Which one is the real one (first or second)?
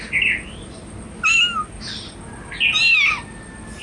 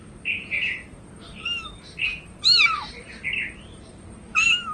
first